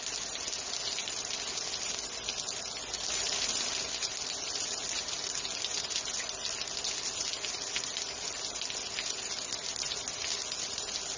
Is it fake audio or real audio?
real